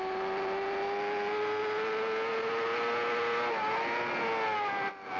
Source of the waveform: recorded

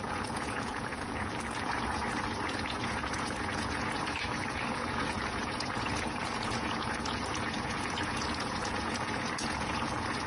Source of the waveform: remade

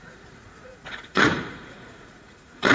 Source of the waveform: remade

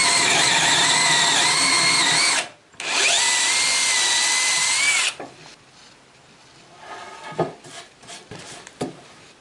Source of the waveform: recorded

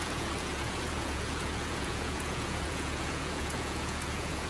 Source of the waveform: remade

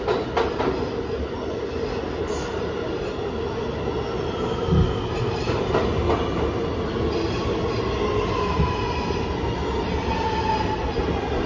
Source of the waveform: recorded